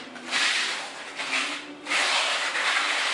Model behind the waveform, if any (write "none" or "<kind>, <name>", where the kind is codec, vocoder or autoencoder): none